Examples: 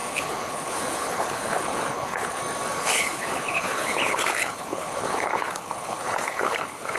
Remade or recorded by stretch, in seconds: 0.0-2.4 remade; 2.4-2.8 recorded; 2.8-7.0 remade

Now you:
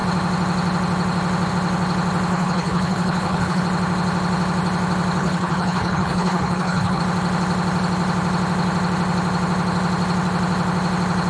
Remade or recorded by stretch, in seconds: 0.0-2.3 recorded; 2.3-3.6 remade; 3.6-5.2 recorded; 5.2-7.0 remade; 7.0-11.3 recorded

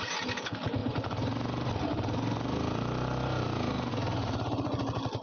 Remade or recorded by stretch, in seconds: 0.0-5.2 recorded

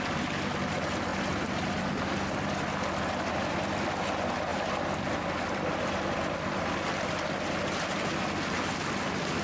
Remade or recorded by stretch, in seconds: 0.0-9.4 recorded

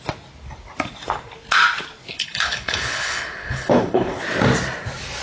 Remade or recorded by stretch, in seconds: 0.0-2.1 recorded; 2.1-4.2 remade; 4.2-5.2 recorded

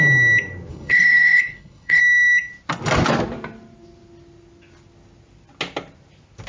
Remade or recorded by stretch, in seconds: 0.0-0.7 recorded; 0.7-2.0 remade; 2.0-6.5 recorded

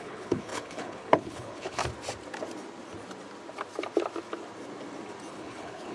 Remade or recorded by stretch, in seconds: 0.0-1.8 remade; 1.8-5.3 recorded; 5.3-5.9 remade

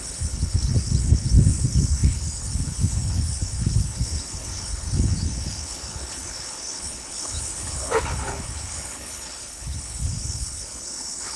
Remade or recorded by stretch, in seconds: 0.0-11.4 remade